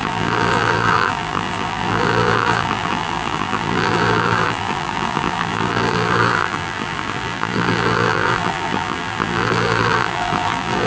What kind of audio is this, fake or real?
fake